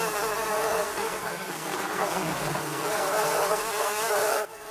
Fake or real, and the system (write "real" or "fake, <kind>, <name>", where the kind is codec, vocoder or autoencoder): fake, codec, SNAC